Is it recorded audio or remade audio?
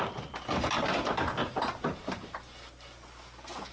recorded